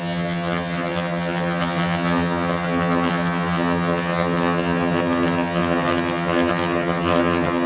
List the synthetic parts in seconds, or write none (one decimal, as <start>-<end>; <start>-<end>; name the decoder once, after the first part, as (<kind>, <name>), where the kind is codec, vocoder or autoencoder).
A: 0.0-7.7 (vocoder, HiFi-GAN)